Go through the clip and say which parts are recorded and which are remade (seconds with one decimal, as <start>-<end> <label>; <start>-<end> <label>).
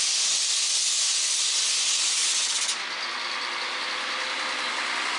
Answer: 0.0-5.2 recorded